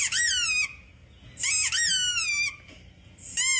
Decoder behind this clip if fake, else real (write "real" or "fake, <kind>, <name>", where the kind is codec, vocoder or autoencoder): real